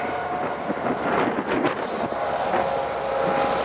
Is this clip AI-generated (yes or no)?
no